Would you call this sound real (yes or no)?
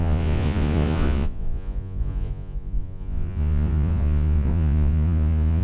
no